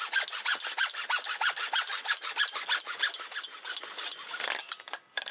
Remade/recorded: recorded